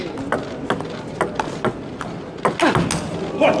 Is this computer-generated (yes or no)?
no